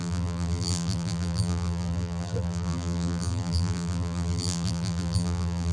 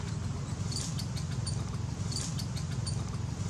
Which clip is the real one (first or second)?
second